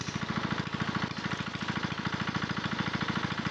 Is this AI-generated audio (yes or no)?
no